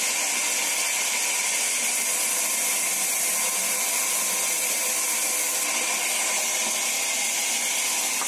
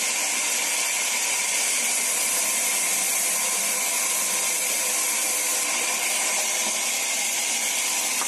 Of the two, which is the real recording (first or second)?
first